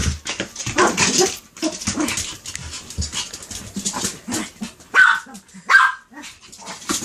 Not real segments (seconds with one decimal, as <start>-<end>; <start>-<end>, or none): 0.6-1.9; 6.1-7.0

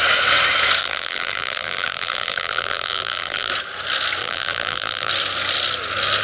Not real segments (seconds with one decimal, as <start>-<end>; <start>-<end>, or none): 0.8-3.5; 4.2-5.1

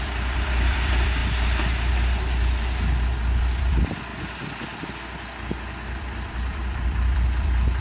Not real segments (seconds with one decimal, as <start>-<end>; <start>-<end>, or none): 0.0-1.2; 3.4-4.1; 6.0-7.8

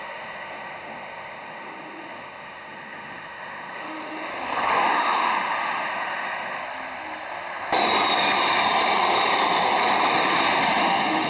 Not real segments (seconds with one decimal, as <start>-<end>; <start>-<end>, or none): 0.0-4.3; 4.8-6.6; 10.8-11.3

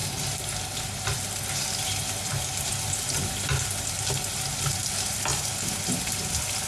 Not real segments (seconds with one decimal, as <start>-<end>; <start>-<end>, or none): none

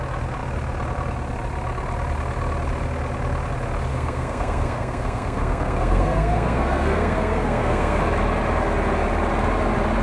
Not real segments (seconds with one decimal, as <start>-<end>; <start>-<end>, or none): 3.9-8.0